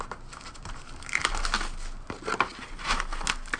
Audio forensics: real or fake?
real